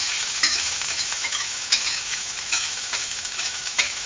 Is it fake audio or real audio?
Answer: fake